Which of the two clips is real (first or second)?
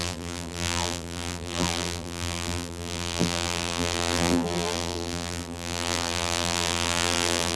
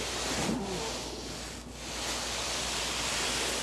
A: second